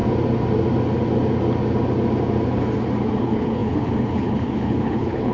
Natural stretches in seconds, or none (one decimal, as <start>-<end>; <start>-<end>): 0.0-3.2